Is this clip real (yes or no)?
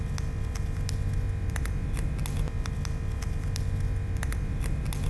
yes